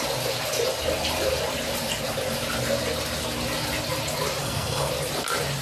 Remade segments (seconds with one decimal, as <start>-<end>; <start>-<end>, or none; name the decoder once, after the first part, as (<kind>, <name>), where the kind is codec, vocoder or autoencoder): 4.4-4.9 (codec, SNAC)